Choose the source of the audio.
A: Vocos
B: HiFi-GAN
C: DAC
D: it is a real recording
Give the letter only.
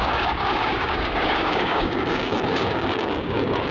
C